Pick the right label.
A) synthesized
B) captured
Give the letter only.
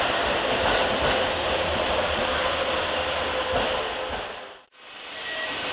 B